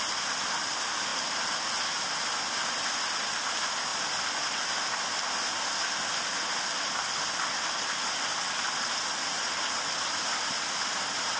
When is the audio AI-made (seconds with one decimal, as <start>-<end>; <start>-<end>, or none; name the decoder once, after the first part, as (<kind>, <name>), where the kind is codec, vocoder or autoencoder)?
none

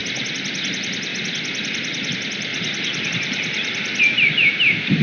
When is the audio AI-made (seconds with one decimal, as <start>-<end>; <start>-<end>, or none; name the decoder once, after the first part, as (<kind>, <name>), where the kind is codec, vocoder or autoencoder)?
0.7-1.1 (vocoder, BigVGAN v2); 2.1-2.5; 4.0-5.0

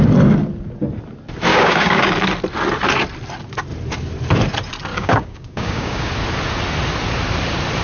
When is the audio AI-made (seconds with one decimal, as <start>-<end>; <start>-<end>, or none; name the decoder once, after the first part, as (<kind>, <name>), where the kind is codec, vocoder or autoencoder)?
1.5-2.1 (codec, DAC); 4.9-6.1

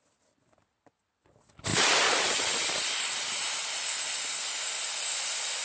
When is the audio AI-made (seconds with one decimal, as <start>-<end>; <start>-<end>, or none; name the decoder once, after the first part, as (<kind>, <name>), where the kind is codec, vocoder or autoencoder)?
none

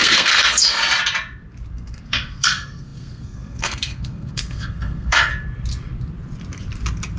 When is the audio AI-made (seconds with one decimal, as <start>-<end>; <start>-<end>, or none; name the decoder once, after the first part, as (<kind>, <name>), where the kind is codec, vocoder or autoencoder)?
0.0-0.8 (codec, SNAC); 1.7-5.3

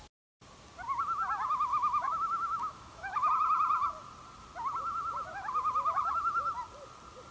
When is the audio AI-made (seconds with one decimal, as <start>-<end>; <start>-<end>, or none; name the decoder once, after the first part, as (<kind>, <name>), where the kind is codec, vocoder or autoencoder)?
1.7-3.3 (autoencoder, DAC-VAE)

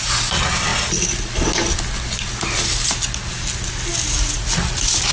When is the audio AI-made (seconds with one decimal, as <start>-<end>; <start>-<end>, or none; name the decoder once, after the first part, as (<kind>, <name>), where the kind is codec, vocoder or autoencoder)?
none